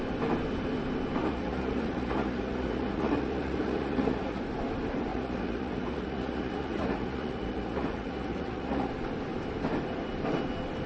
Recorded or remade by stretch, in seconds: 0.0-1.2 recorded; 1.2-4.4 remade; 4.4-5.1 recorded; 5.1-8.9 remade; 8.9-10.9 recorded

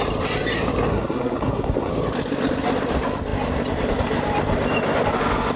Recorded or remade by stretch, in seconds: 0.0-0.9 recorded; 0.9-1.9 remade; 1.9-5.6 recorded